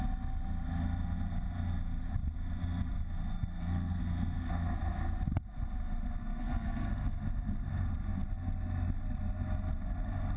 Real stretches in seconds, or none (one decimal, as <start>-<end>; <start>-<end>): 0.0-3.3; 4.0-6.2; 6.9-10.4